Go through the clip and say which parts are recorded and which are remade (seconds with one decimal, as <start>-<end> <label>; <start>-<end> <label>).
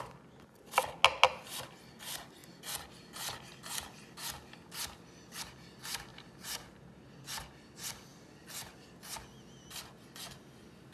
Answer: 0.0-6.1 recorded; 6.1-7.4 remade; 7.4-10.9 recorded